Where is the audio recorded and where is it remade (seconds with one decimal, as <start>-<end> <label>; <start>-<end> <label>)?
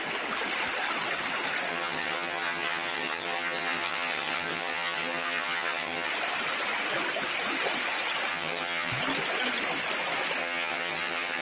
0.0-1.7 recorded; 1.7-6.1 remade; 6.1-8.3 recorded; 8.3-8.9 remade; 8.9-10.4 recorded; 10.4-11.4 remade